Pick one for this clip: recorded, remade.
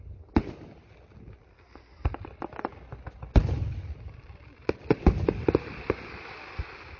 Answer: recorded